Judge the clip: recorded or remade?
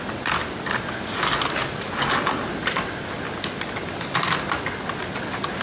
recorded